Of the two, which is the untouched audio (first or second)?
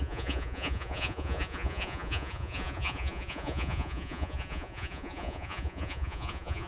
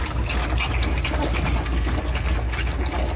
second